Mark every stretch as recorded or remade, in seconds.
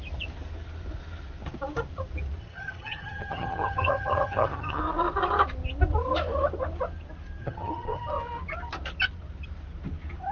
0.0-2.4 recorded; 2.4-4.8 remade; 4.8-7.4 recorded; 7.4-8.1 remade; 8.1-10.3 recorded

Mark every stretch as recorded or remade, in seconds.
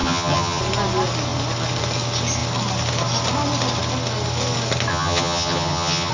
0.0-0.6 remade; 0.6-4.9 recorded; 4.9-6.1 remade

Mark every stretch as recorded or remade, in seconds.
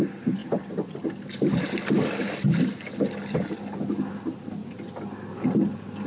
0.0-6.1 recorded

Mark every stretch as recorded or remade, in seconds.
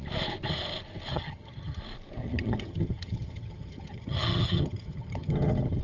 0.0-1.1 recorded; 1.1-1.8 remade; 1.8-2.2 recorded; 2.2-5.8 remade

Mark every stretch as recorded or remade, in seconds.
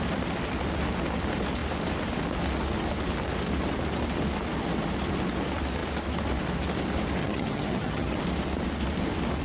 0.0-7.2 recorded; 7.2-8.2 remade; 8.2-9.4 recorded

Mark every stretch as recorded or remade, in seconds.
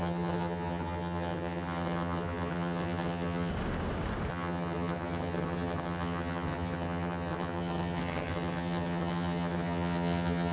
0.0-3.5 remade; 3.5-4.3 recorded; 4.3-10.5 remade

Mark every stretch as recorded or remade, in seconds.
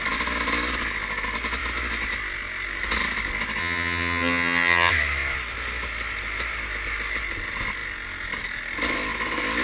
0.0-3.6 recorded; 3.6-4.9 remade; 4.9-9.6 recorded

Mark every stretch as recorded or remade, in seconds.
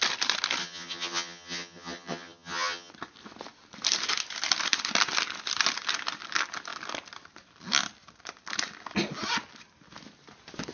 0.0-0.6 recorded; 0.6-2.9 remade; 2.9-10.7 recorded